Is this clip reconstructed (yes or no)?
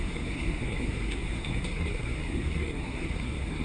yes